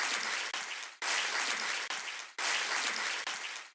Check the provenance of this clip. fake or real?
real